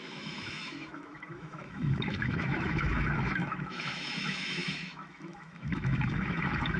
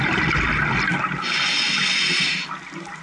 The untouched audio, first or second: second